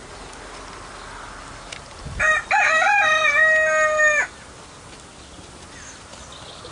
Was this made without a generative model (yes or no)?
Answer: yes